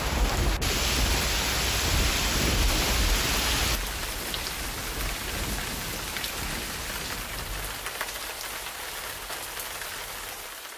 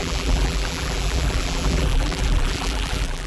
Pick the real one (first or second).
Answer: first